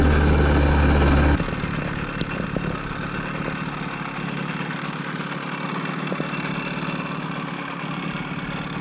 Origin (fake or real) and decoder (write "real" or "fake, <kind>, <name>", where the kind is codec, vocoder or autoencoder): real